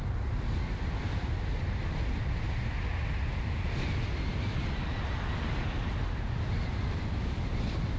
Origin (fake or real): real